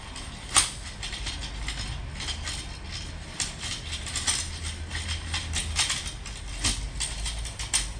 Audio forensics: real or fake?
real